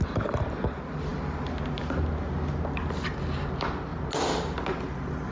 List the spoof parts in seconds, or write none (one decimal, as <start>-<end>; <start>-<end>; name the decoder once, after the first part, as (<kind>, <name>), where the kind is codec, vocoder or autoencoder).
none